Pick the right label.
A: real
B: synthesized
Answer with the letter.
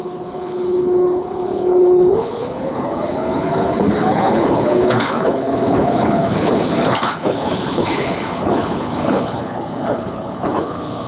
B